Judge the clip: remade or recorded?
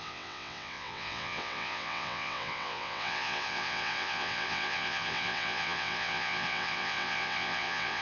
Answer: remade